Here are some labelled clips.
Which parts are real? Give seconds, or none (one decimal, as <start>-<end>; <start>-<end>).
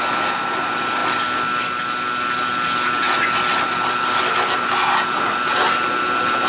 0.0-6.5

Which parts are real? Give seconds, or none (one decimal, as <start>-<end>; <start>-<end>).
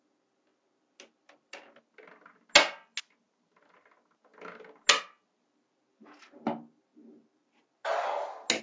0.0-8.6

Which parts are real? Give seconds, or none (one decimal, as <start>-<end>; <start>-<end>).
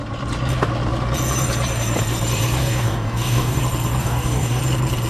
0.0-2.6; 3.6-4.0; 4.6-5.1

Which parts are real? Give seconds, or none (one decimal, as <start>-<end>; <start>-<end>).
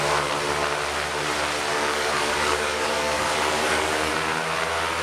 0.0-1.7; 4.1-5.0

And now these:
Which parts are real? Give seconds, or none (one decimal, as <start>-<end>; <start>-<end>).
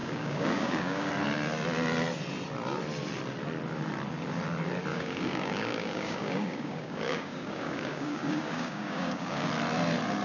1.1-4.9; 9.5-10.2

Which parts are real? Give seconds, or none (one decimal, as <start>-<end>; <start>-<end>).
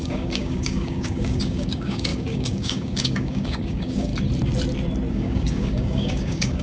4.1-5.1